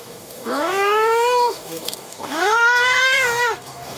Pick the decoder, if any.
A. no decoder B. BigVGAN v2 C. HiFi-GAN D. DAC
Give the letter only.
D